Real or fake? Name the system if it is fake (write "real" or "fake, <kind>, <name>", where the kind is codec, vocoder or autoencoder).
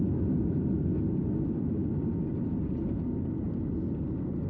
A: real